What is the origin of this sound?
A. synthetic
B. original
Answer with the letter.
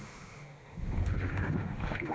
A